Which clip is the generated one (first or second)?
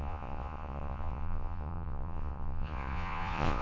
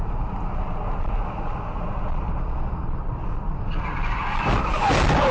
first